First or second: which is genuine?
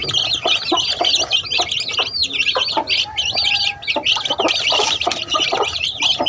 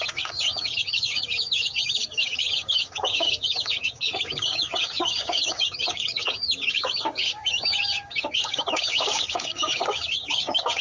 first